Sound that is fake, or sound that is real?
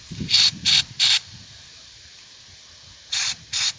real